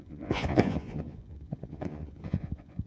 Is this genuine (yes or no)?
no